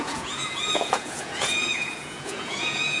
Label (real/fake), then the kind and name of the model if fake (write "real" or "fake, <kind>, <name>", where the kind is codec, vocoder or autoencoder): fake, vocoder, Vocos